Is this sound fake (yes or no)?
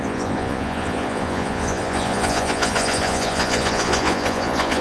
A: yes